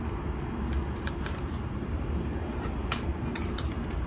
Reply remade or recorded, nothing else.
remade